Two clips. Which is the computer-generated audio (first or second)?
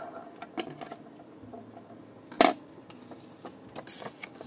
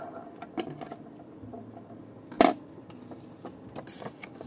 second